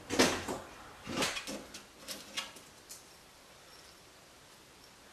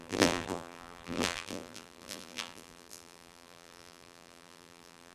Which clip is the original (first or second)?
first